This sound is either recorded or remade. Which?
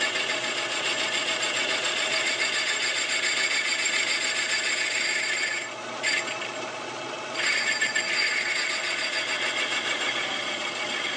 remade